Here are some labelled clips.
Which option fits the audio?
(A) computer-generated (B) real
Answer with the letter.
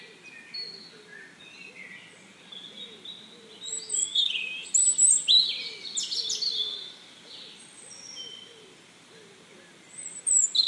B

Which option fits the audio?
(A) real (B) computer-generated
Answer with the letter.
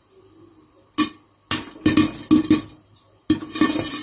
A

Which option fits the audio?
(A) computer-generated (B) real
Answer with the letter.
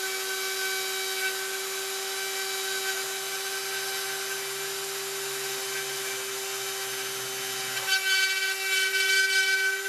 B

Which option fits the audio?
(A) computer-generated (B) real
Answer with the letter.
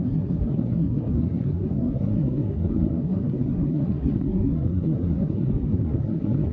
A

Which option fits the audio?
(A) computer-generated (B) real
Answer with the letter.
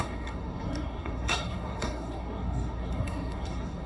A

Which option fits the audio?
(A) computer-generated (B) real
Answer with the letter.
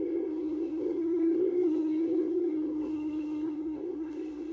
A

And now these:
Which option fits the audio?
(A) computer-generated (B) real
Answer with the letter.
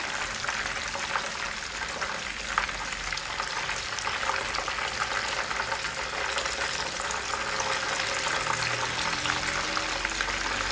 B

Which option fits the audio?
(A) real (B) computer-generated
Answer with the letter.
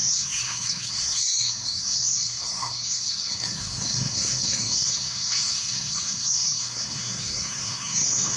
B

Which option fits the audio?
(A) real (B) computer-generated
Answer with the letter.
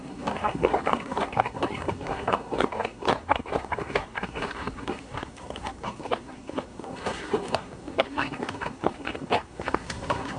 B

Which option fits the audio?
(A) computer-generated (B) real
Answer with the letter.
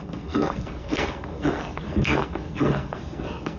A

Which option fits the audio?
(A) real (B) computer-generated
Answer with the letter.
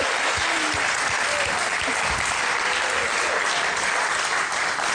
A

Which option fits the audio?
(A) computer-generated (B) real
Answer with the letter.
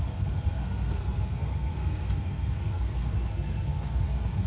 A